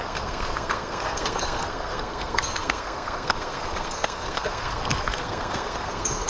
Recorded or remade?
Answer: remade